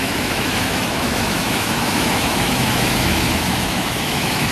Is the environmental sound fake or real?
fake